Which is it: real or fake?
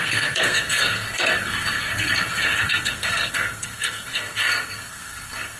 fake